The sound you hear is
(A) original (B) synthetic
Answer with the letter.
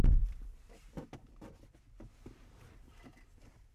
B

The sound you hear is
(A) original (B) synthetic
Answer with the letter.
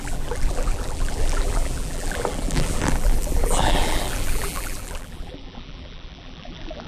B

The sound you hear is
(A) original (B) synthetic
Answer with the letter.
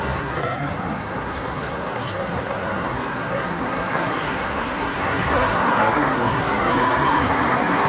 B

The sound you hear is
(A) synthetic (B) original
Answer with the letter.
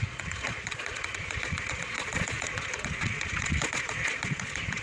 A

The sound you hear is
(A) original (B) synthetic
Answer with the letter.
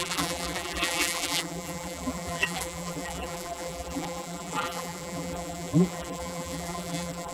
B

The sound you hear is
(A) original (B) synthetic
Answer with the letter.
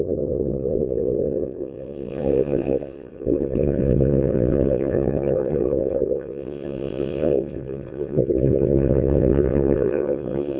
B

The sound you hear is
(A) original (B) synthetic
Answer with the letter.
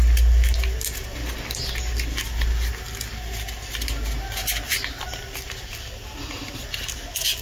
A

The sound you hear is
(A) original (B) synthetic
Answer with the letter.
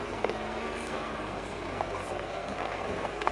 B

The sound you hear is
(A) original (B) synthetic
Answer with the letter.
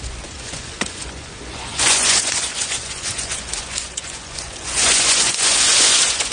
B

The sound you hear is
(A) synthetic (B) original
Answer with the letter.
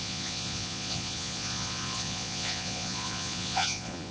A